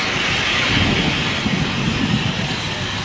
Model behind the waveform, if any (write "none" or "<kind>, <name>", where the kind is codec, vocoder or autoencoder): none